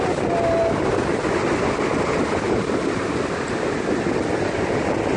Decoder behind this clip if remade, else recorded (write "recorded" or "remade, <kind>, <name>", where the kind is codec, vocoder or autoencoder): recorded